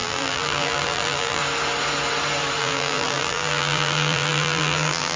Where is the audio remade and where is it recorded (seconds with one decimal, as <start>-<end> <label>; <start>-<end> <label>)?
0.0-1.4 remade; 1.4-2.6 recorded; 2.6-5.2 remade